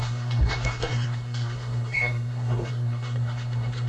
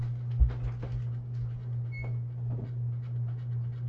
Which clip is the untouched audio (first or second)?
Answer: second